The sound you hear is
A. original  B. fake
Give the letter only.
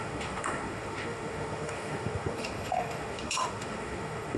B